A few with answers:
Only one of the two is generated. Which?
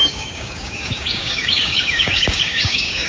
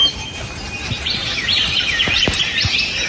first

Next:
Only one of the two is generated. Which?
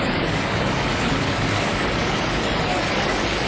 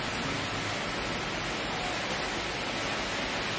first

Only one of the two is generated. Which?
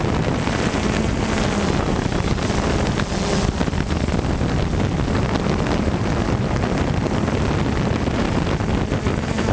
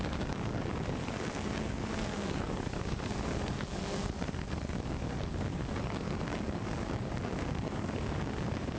second